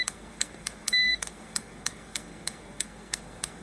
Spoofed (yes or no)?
yes